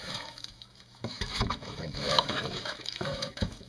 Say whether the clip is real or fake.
fake